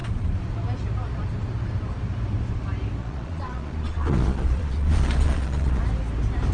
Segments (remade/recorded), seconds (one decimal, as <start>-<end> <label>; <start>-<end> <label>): 0.0-3.0 recorded; 3.0-5.8 remade; 5.8-6.5 recorded

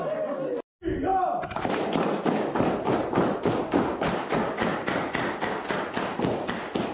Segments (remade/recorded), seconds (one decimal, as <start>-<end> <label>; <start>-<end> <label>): 0.0-6.9 recorded

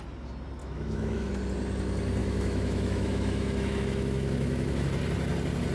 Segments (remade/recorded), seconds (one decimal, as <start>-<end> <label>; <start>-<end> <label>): 0.0-0.6 recorded; 0.6-1.3 remade; 1.3-2.2 recorded; 2.2-4.8 remade; 4.8-5.7 recorded

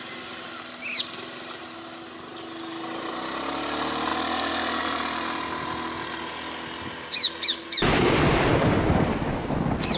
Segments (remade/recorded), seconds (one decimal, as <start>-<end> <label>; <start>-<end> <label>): 0.0-0.9 remade; 0.9-2.3 recorded; 2.3-4.1 remade; 4.1-4.8 recorded; 4.8-10.0 remade

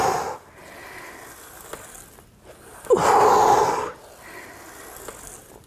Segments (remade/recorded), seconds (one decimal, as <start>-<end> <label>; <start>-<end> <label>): 0.0-5.7 recorded

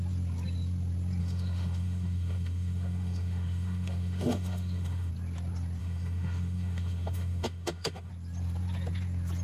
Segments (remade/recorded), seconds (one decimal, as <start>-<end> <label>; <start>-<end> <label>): 0.0-1.2 recorded; 1.2-5.1 remade; 5.1-5.8 recorded; 5.8-8.1 remade; 8.1-9.4 recorded

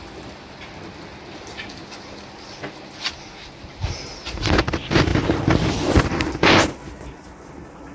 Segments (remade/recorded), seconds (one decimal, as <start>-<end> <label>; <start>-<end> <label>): 0.0-7.9 recorded